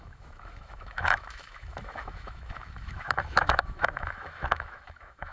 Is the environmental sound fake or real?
fake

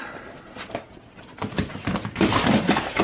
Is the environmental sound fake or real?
real